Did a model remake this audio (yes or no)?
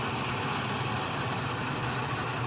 no